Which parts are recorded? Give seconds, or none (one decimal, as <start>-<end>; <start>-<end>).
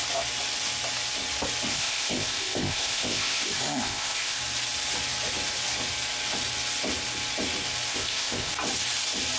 0.0-1.7; 4.4-7.9; 8.5-9.4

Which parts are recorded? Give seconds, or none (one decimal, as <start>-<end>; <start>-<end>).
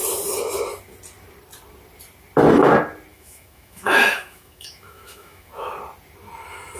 0.0-3.1; 5.7-6.8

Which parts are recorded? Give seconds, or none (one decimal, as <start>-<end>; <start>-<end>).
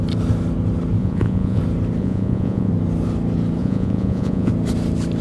0.0-1.0; 1.6-2.0; 2.7-3.6; 4.5-5.2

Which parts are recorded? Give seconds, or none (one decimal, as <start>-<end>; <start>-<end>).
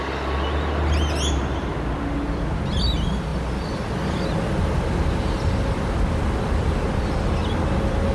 0.0-8.1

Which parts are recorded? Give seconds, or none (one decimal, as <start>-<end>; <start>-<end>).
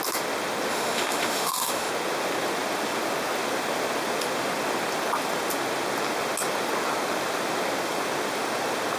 0.0-0.7; 1.9-9.0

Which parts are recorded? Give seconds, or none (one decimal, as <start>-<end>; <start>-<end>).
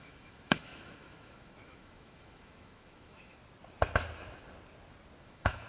3.4-5.2